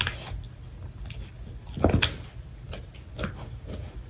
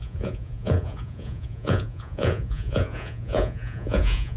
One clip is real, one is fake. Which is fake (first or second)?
second